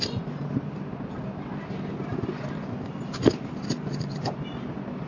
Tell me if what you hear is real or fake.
real